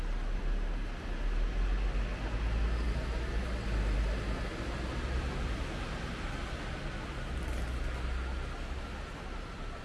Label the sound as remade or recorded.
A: recorded